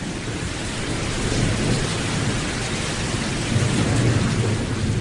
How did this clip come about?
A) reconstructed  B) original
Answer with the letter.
B